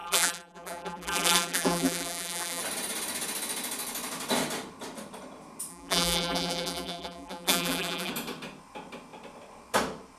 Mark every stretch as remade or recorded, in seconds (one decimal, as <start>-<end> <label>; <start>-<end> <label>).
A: 0.0-2.6 remade; 2.6-5.7 recorded; 5.7-8.1 remade; 8.1-10.2 recorded